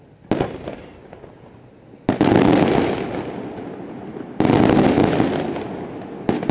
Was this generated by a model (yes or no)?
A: no